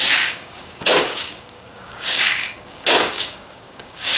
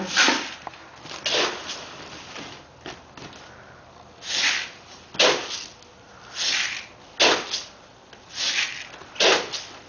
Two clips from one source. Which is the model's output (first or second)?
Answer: first